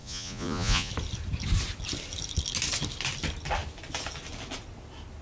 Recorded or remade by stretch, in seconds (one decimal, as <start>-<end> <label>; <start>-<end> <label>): 0.0-0.9 remade; 0.9-5.2 recorded